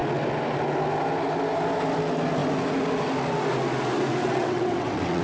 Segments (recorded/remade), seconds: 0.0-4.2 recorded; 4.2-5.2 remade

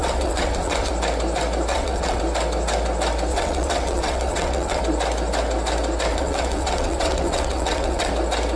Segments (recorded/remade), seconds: 0.0-0.9 remade; 0.9-1.7 recorded; 1.7-2.2 remade; 2.2-3.3 recorded; 3.3-4.8 remade; 4.8-6.1 recorded; 6.1-8.1 remade; 8.1-8.6 recorded

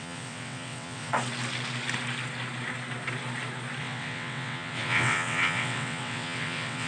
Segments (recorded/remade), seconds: 0.0-1.1 remade; 1.1-3.8 recorded; 3.8-6.9 remade

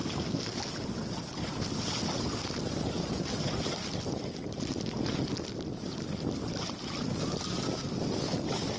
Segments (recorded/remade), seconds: 0.0-8.8 recorded

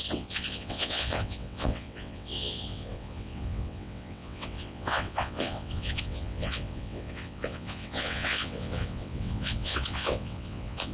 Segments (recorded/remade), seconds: 0.0-10.9 remade

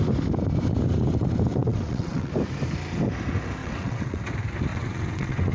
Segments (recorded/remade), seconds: 0.0-1.6 recorded; 1.6-2.3 remade; 2.3-3.6 recorded; 3.6-4.2 remade; 4.2-4.7 recorded; 4.7-5.5 remade